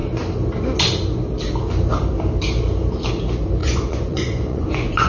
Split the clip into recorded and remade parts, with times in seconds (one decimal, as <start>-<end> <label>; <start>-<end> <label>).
0.0-3.6 recorded; 3.6-5.1 remade